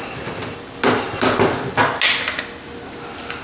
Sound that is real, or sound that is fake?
real